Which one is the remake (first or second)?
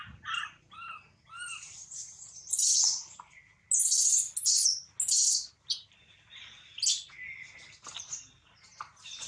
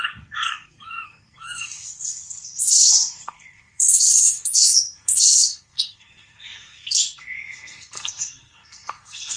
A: second